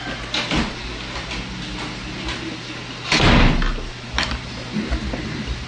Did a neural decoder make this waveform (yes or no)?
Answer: no